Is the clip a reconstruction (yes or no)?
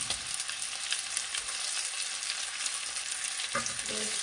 no